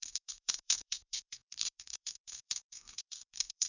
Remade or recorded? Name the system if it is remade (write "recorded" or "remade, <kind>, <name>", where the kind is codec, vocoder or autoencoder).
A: remade, codec, SNAC